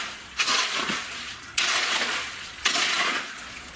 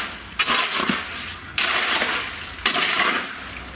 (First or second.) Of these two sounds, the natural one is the second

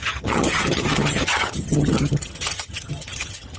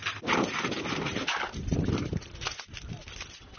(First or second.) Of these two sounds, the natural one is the second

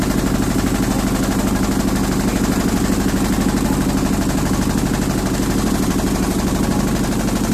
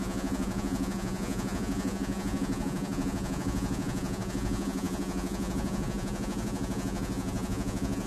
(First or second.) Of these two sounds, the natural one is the first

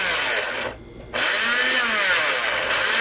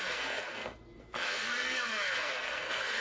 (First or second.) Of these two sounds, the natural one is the first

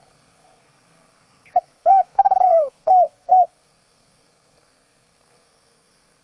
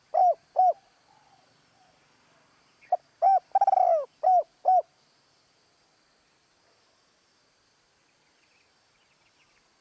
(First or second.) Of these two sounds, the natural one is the second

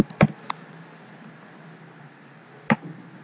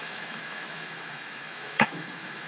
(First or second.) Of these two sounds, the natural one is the first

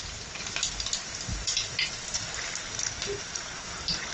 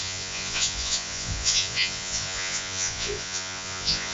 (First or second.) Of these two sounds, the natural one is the first